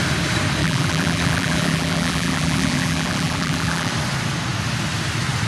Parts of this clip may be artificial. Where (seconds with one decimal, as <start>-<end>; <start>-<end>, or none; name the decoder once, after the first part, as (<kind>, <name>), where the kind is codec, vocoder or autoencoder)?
0.6-3.9 (vocoder, BigVGAN v2)